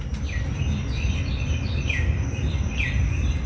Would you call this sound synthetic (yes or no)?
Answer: no